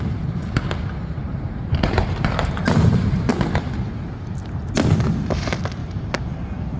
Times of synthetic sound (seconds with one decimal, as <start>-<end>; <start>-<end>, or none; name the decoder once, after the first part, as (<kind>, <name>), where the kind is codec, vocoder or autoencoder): 1.2-3.3 (vocoder, BigVGAN v2); 5.8-6.8